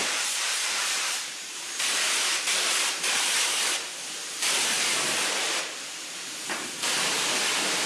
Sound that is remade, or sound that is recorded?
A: remade